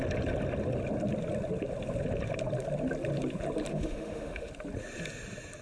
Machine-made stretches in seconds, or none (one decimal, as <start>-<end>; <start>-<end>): 3.7-4.5